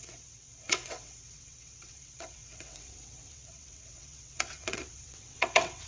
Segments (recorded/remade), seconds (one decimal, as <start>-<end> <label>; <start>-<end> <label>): 0.0-5.9 remade